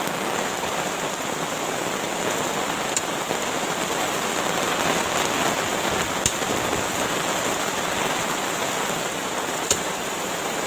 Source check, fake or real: real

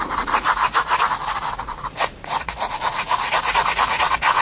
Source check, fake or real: fake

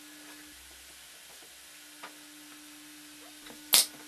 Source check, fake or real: real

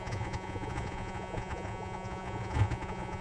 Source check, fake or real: fake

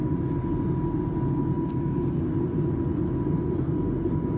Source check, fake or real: real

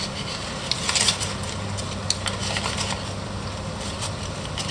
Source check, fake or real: real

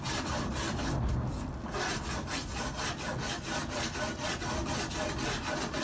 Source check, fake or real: real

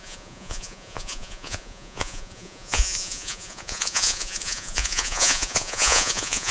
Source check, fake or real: fake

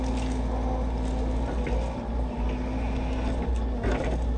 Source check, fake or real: real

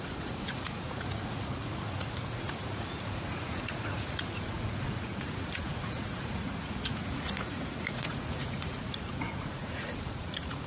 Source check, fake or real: fake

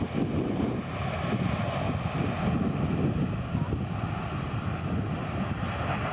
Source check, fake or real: real